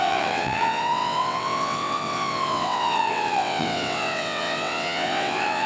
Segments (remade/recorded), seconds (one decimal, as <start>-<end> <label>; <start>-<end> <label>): 0.0-5.7 remade